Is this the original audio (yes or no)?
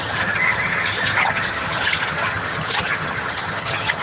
no